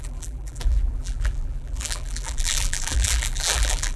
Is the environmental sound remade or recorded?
remade